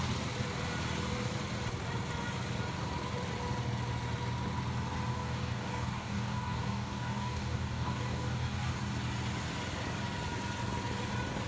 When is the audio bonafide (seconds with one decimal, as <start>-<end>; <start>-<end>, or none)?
0.0-5.1; 8.7-11.5